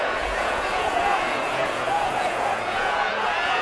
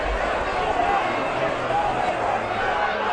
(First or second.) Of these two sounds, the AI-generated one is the first